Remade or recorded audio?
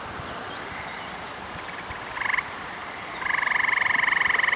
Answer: recorded